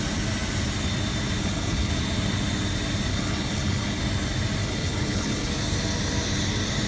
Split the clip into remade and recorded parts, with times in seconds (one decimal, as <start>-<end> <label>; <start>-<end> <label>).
0.0-1.4 recorded; 1.4-1.9 remade; 1.9-3.1 recorded; 3.1-4.0 remade; 4.0-4.6 recorded; 4.6-5.5 remade; 5.5-6.9 recorded